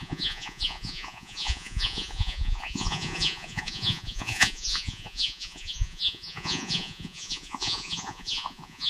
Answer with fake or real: fake